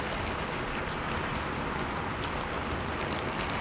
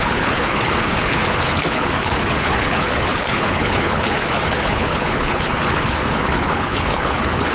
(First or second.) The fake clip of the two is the second